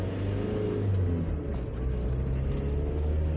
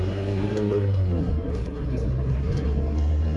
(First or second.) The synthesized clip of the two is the second